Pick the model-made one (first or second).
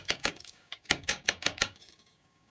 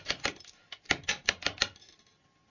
first